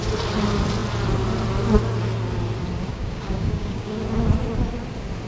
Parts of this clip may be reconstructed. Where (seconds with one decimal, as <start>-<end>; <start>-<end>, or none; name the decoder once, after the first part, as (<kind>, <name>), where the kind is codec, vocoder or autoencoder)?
2.9-4.0 (codec, DAC)